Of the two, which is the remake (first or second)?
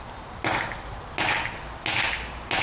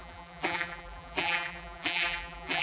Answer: second